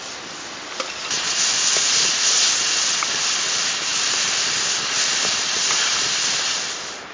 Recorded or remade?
recorded